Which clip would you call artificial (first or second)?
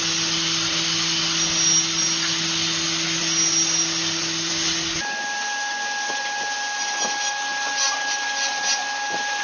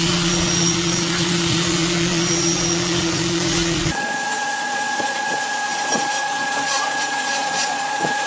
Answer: second